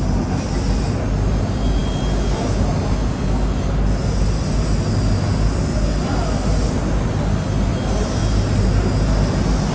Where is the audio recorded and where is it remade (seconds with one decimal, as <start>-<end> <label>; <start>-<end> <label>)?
0.0-9.7 recorded